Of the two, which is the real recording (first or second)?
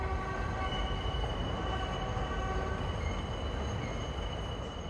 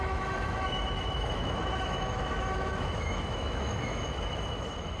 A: first